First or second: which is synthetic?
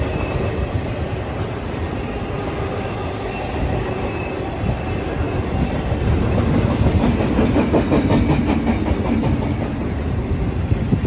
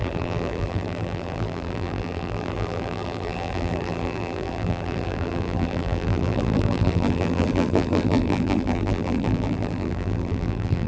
second